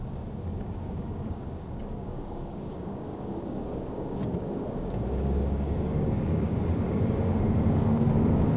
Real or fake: fake